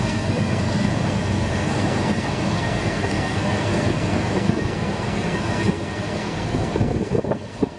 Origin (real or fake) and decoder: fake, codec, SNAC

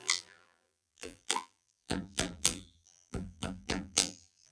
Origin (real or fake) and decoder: fake, vocoder, BigVGAN v2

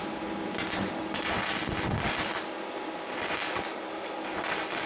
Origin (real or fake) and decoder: real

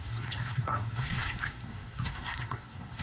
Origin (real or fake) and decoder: fake, codec, SNAC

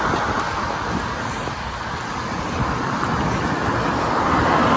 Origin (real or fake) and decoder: real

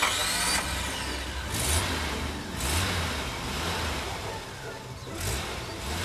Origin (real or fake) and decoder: real